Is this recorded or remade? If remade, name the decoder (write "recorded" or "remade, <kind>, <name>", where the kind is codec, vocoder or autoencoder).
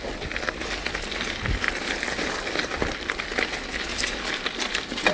recorded